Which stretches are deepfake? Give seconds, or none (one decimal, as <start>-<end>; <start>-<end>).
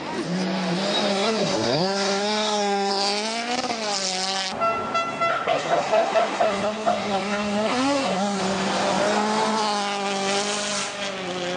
1.1-2.9; 5.3-8.4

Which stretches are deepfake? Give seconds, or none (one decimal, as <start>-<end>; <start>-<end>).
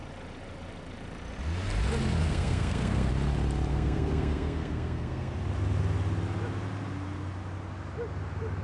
2.2-3.1; 3.7-5.3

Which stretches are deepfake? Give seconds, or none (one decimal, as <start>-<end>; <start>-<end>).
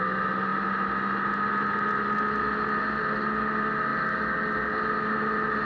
none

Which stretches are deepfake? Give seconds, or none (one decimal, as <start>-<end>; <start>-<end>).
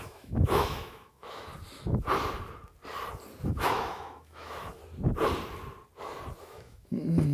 0.0-1.5; 3.5-4.8; 6.4-7.3